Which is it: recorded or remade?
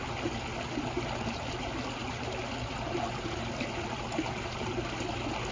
recorded